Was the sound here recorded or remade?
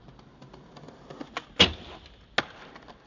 recorded